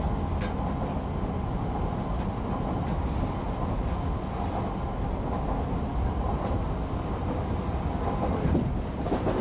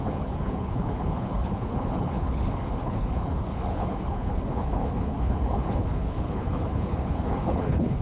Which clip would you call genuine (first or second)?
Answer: first